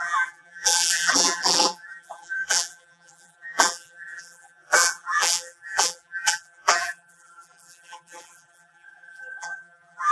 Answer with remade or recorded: remade